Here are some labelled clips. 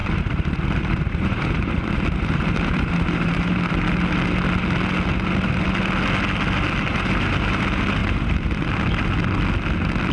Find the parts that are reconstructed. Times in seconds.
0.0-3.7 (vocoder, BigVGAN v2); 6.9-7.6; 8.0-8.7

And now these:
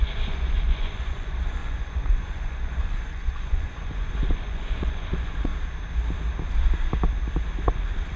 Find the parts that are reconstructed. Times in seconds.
0.0-5.5 (vocoder, Vocos); 7.7-8.2

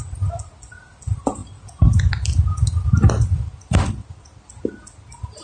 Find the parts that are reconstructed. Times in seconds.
none

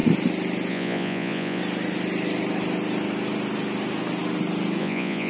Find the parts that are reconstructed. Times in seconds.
0.7-1.6 (vocoder, Vocos); 4.8-5.3